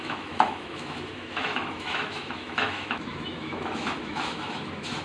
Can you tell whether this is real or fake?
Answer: fake